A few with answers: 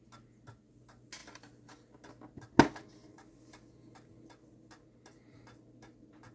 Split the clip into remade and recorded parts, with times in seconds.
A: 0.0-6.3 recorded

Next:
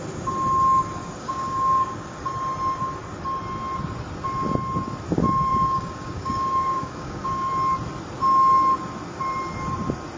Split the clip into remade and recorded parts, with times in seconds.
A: 0.0-1.0 recorded; 1.0-2.2 remade; 2.2-5.5 recorded; 5.5-7.5 remade; 7.5-10.2 recorded

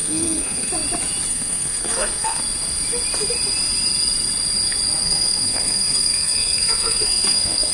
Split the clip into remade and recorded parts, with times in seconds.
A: 0.0-0.7 remade; 0.7-1.3 recorded; 1.3-2.4 remade; 2.4-5.0 recorded; 5.0-7.7 remade